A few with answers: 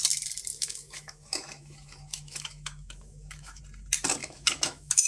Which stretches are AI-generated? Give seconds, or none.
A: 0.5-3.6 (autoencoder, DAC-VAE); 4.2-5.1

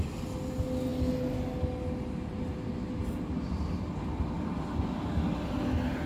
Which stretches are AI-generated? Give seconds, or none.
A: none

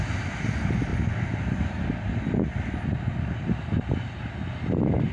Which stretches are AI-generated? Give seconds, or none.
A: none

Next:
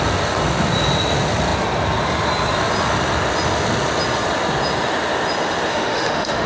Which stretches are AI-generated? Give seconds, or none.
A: 5.7-6.5 (autoencoder, DAC-VAE)

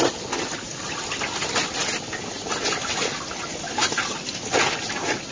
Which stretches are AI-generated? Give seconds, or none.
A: none

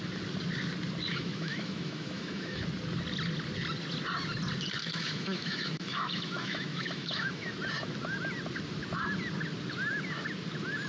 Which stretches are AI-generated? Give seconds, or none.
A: 1.1-2.6 (autoencoder, DAC-VAE); 4.8-7.5

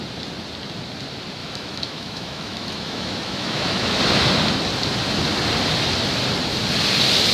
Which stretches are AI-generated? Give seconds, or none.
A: 1.4-4.0 (autoencoder, DAC-VAE)